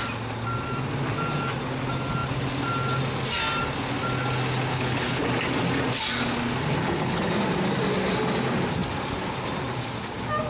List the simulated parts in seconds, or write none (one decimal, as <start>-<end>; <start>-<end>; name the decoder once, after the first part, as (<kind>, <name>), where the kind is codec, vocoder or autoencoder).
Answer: 4.7-5.2 (codec, HILCodec); 6.8-7.3